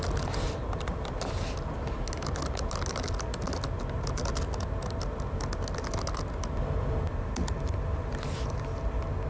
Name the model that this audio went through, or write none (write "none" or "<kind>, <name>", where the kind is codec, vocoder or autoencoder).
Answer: none